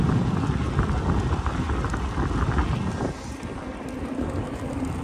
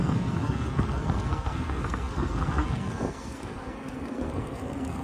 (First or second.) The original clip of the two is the first